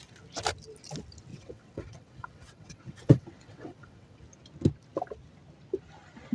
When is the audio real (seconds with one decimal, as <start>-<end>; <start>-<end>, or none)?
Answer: 0.0-1.3; 4.2-6.3